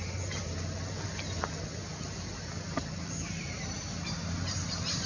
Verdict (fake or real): real